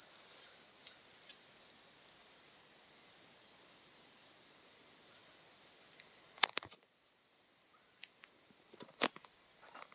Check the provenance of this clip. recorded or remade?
recorded